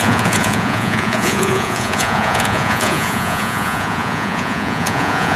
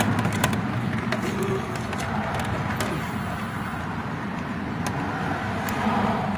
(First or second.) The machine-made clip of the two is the first